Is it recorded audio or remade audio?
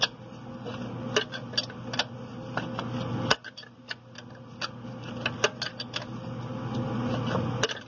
recorded